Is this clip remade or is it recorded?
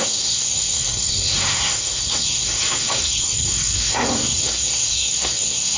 remade